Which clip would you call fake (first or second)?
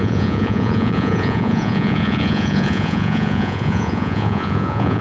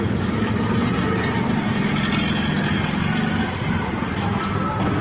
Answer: first